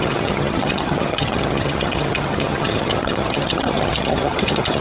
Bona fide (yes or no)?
no